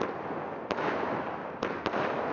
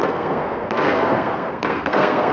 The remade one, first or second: second